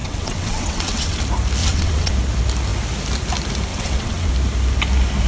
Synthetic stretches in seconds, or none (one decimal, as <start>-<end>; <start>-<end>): 0.0-1.2; 1.6-2.1; 3.7-4.3